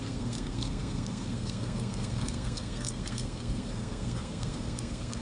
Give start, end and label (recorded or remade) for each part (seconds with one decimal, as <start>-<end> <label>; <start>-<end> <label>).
0.0-5.2 remade